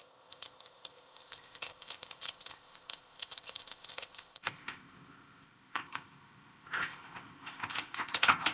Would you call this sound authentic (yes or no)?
no